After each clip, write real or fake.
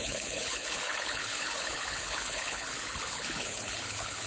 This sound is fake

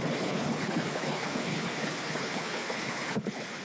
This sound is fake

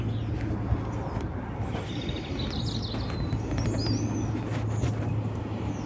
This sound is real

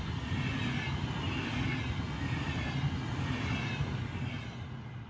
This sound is real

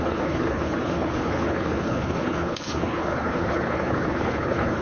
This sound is fake